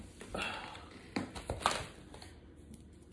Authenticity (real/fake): real